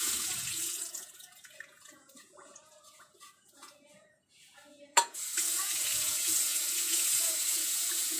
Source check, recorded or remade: remade